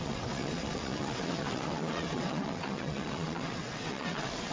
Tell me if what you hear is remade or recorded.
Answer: remade